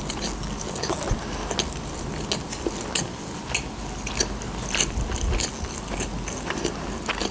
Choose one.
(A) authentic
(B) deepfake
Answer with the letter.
A